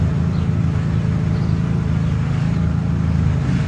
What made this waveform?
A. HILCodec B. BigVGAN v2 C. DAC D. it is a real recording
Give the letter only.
D